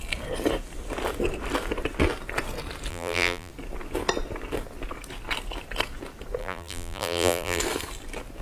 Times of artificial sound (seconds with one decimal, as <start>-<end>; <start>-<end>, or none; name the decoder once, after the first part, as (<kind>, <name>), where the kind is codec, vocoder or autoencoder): 2.9-3.5 (vocoder, BigVGAN v2); 6.4-7.6

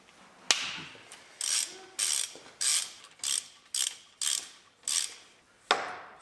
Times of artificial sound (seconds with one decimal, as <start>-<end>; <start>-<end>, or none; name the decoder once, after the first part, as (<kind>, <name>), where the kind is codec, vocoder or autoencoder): none

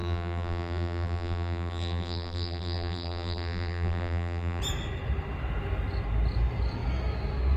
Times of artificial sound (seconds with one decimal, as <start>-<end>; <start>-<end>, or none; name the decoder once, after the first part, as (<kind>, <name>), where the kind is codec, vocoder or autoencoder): 0.0-4.6 (vocoder, BigVGAN v2)

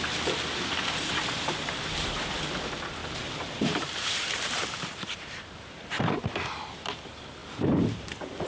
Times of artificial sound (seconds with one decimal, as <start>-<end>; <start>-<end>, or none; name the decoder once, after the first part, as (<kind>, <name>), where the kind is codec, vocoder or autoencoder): 3.0-6.2 (vocoder, BigVGAN v2)

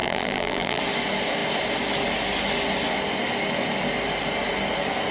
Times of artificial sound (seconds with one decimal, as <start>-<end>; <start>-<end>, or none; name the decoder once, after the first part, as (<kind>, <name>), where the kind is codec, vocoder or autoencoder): 0.0-0.8 (vocoder, BigVGAN v2)

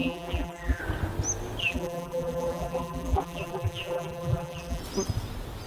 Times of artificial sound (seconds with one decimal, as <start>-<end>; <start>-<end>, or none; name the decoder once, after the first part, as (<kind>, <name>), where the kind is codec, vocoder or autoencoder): 0.0-0.8 (vocoder, BigVGAN v2); 1.6-4.8